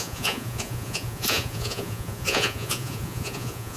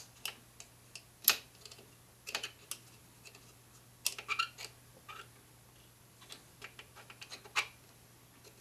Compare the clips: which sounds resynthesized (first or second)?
first